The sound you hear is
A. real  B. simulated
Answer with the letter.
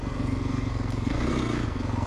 B